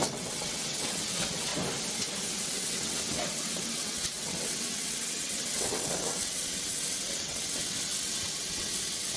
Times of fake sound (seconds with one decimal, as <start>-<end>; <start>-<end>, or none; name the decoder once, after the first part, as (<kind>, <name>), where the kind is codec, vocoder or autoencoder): 0.0-1.5 (vocoder, WaveNeXt); 2.3-9.2